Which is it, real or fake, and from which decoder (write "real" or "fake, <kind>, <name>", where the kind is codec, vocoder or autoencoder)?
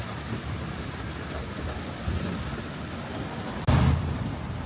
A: real